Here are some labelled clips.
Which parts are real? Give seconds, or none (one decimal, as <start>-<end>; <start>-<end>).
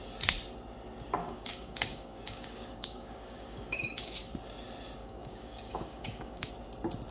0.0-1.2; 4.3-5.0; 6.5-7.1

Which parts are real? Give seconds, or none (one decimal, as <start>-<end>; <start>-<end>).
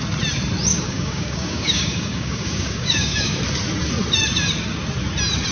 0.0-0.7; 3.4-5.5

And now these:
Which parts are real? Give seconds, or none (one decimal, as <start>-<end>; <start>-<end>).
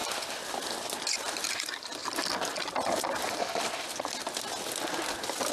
0.0-5.5